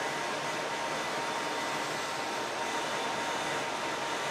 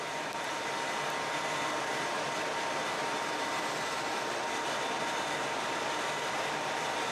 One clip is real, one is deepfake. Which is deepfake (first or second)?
second